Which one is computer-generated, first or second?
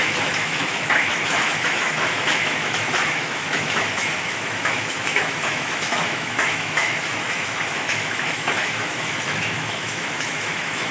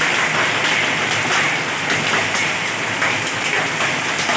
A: first